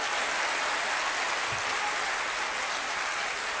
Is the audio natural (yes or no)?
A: yes